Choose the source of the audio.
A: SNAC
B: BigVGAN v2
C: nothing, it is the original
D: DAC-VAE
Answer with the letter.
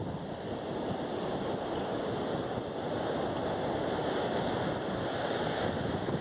C